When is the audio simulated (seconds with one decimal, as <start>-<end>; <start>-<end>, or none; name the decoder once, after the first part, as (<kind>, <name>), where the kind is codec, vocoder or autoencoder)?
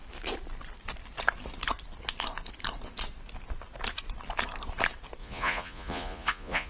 5.2-6.7 (vocoder, Vocos)